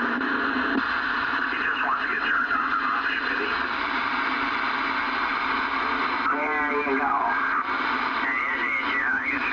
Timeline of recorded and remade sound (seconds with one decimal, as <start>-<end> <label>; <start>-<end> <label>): 0.0-2.1 recorded; 2.1-2.7 remade; 2.7-9.5 recorded